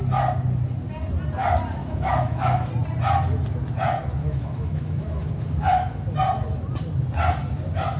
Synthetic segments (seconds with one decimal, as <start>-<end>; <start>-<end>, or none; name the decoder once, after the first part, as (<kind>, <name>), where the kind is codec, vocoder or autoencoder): 1.8-2.7 (autoencoder, DAC-VAE); 4.2-5.3